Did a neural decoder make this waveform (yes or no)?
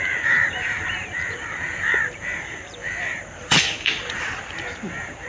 yes